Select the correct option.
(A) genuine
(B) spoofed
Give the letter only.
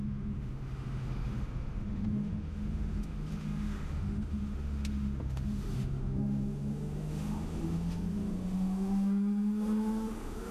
B